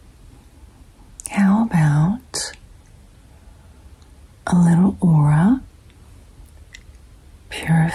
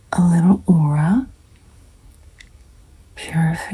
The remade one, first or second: second